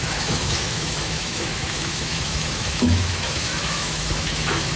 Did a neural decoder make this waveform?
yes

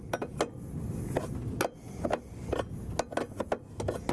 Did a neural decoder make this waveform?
no